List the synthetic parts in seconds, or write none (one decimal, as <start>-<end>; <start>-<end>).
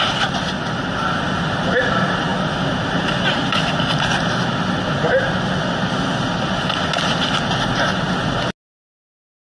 none